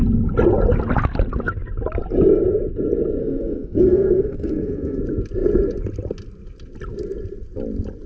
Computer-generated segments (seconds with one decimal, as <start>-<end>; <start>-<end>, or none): 3.2-5.0